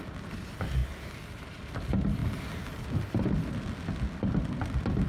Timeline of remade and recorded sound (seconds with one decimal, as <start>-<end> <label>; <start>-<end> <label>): 0.0-5.1 recorded